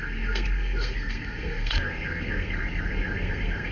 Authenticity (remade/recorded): remade